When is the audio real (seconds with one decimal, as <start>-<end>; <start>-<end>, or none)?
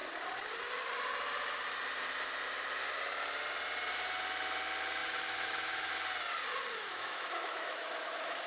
0.0-5.0; 5.9-6.9